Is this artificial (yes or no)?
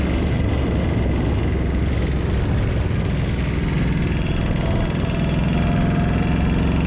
no